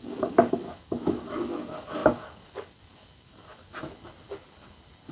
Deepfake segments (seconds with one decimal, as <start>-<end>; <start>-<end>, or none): 0.0-3.7